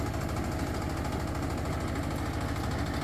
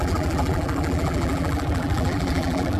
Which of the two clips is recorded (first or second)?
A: first